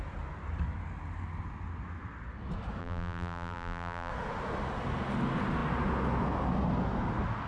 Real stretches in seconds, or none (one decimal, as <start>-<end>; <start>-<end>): 0.0-2.8; 4.1-7.5